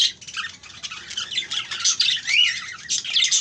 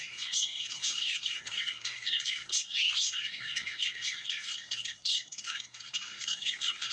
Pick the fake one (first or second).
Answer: second